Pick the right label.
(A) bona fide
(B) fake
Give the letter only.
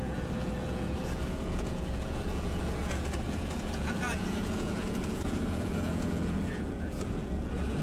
B